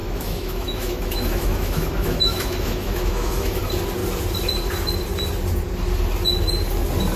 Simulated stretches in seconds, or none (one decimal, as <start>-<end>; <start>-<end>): 0.0-3.6